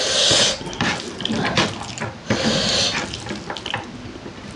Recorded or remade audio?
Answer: recorded